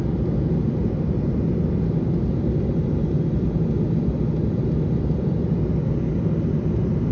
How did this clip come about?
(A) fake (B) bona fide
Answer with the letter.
B